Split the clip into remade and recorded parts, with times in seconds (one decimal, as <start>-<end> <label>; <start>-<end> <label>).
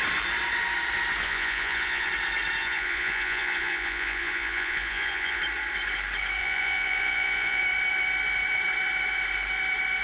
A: 0.0-1.2 recorded; 1.2-2.1 remade; 2.1-2.6 recorded; 2.6-5.4 remade; 5.4-6.4 recorded; 6.4-7.6 remade; 7.6-10.0 recorded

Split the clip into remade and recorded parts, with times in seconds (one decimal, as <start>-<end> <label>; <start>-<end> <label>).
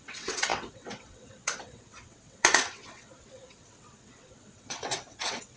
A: 0.0-5.6 remade